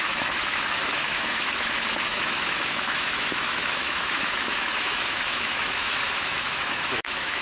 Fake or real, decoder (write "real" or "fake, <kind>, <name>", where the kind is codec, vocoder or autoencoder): fake, autoencoder, DAC-VAE